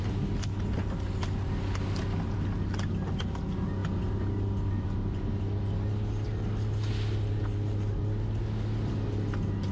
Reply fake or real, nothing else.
real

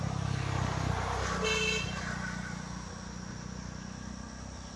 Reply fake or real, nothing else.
real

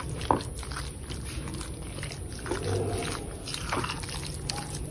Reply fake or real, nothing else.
real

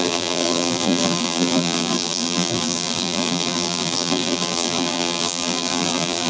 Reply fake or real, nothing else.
fake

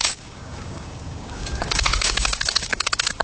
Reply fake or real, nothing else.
fake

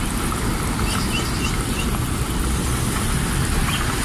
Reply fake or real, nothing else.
real